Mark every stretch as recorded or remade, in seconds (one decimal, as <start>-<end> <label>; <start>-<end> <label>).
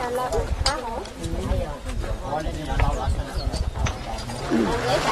0.0-3.1 recorded; 3.1-4.4 remade; 4.4-5.1 recorded